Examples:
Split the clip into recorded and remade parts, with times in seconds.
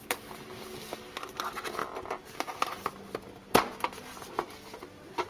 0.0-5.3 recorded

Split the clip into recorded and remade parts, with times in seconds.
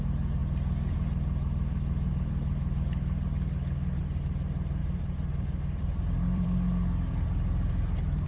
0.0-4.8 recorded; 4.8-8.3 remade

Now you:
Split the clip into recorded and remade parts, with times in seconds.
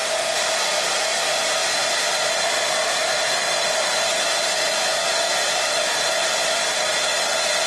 0.0-1.6 recorded; 1.6-3.1 remade; 3.1-7.7 recorded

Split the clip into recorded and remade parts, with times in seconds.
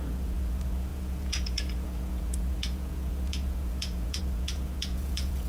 0.0-5.5 remade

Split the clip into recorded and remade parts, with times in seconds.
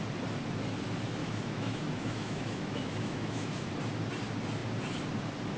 0.0-1.2 recorded; 1.2-3.7 remade; 3.7-5.6 recorded